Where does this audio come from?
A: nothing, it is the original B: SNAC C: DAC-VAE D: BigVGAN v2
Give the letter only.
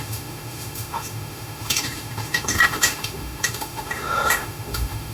C